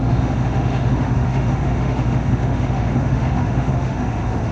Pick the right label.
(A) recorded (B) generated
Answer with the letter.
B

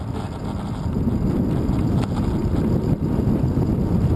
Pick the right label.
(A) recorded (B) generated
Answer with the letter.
A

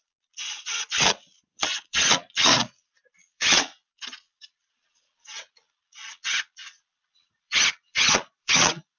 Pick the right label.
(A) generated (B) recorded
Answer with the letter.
A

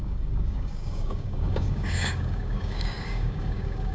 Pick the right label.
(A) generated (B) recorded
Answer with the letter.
A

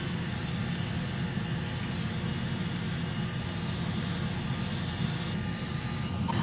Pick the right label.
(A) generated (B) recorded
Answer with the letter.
B